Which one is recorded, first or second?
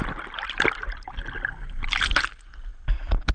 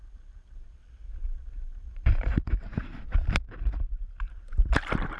first